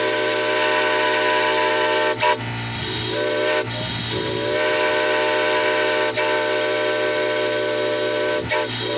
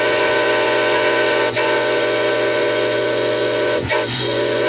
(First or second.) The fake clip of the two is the second